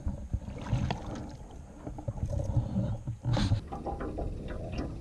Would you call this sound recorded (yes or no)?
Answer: yes